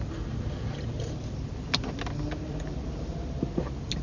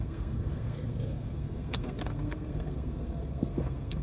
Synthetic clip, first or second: second